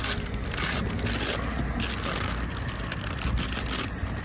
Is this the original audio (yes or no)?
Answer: yes